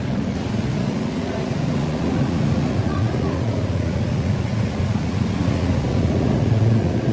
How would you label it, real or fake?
fake